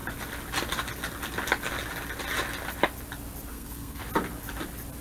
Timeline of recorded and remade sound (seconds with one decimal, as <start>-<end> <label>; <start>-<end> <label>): 0.0-3.5 recorded; 3.5-4.0 remade; 4.0-5.0 recorded